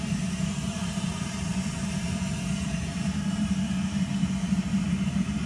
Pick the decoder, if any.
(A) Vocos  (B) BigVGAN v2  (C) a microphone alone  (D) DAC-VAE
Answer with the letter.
B